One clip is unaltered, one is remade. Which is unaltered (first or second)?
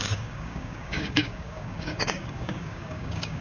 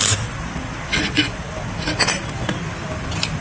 second